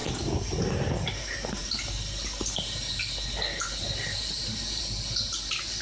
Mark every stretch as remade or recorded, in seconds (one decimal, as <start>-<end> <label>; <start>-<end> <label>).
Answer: 0.0-5.8 recorded